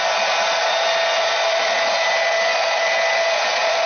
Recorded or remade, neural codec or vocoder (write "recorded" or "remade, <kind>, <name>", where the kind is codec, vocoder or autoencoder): recorded